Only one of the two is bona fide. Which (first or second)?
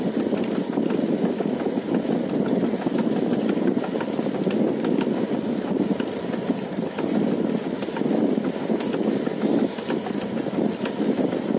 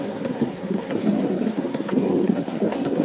first